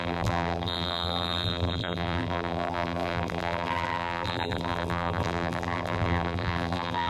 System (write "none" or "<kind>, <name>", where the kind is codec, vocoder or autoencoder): vocoder, BigVGAN v2